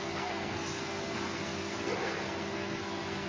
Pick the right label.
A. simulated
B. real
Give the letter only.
A